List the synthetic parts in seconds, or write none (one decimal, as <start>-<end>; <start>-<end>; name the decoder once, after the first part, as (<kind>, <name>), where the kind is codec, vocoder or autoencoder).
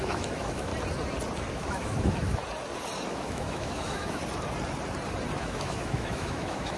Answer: 0.0-0.7 (autoencoder, DAC-VAE); 1.5-2.4; 3.1-4.2; 5.4-6.8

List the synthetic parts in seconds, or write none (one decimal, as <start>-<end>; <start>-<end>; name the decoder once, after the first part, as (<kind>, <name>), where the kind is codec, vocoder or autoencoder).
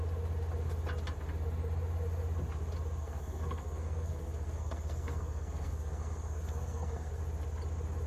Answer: 3.0-7.2 (codec, SNAC)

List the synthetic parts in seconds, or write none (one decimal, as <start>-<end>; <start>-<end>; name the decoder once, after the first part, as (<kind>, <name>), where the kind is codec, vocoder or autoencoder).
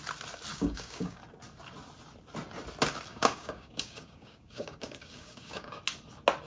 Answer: 0.5-1.2 (codec, DAC); 3.1-5.8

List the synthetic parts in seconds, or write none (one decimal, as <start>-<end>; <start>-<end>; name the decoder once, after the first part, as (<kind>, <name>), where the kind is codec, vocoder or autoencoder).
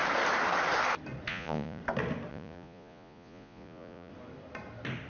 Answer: 1.3-1.8 (vocoder, Vocos); 2.3-4.1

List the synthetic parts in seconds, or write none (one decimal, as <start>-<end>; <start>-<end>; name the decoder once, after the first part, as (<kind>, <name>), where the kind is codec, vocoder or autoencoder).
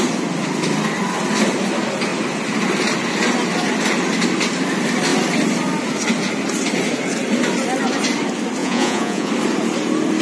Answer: 8.6-9.3 (vocoder, Vocos)